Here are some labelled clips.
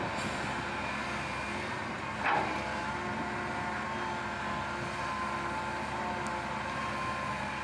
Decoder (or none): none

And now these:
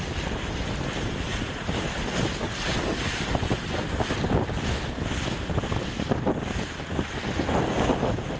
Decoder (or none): none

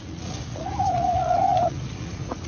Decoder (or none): vocoder, Vocos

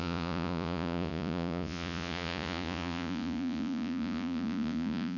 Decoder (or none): vocoder, Vocos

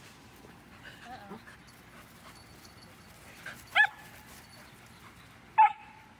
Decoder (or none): none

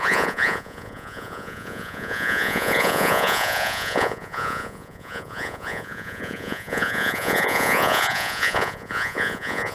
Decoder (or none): vocoder, Vocos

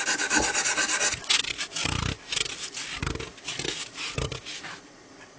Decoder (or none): none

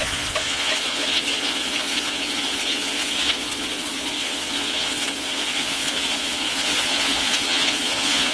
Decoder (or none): vocoder, Vocos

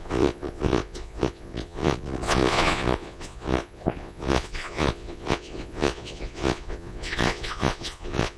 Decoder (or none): vocoder, Vocos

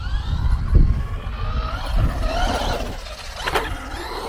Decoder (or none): none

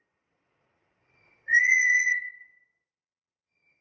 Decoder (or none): vocoder, Vocos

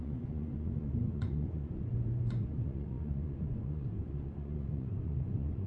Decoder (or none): vocoder, Vocos